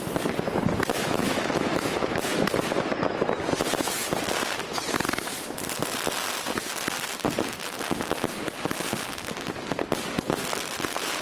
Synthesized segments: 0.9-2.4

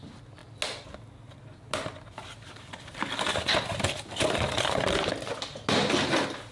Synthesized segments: none

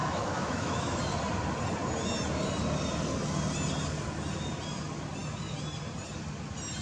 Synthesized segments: 0.0-1.0

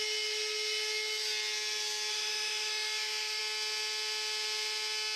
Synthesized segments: 2.1-3.4

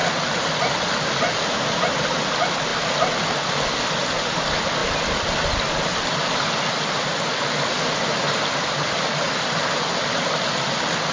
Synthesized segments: none

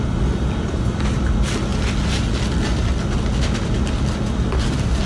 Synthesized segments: none